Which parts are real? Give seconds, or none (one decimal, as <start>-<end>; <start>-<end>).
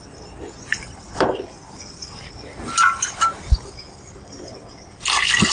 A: 0.0-0.7; 1.2-5.5